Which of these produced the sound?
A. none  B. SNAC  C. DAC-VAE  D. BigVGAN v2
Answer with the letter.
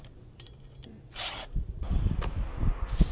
A